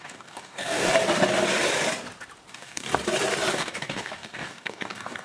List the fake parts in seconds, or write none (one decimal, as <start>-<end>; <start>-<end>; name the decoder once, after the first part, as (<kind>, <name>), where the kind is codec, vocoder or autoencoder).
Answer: 0.0-0.9 (codec, DAC); 2.5-2.9; 3.5-5.2